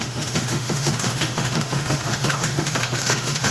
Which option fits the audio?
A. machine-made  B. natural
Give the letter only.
A